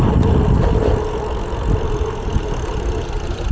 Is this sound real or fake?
real